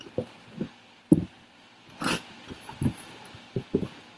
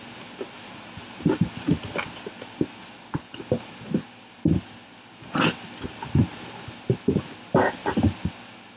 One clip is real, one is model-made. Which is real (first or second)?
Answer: second